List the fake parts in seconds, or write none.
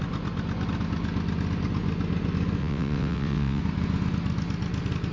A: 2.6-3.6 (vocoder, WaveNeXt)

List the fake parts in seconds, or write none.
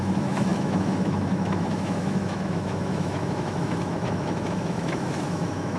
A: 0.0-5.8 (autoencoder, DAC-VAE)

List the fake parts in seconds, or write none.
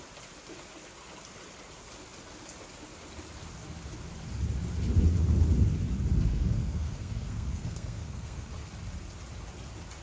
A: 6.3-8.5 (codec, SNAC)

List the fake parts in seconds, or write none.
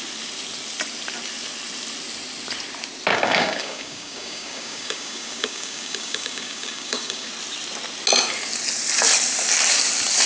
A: 3.1-7.3 (codec, DAC)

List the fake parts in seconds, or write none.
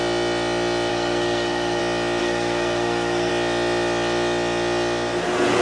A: 0.9-1.8 (codec, SNAC); 2.2-3.3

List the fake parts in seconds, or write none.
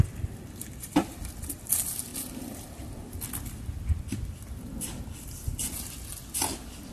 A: 2.1-3.0 (vocoder, BigVGAN v2)